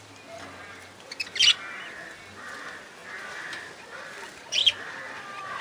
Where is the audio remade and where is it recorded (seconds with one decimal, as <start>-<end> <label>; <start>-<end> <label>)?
0.0-5.6 recorded